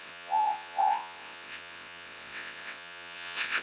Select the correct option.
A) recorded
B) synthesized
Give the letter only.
B